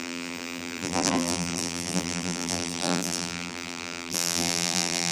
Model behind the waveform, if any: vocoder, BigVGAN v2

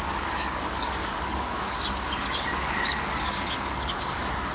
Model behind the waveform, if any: codec, DAC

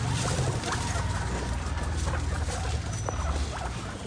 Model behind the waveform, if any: none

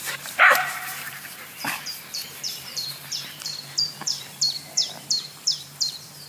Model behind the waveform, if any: vocoder, BigVGAN v2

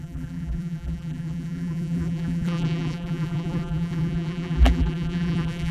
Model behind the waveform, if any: vocoder, BigVGAN v2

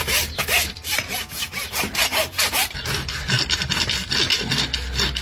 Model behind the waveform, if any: none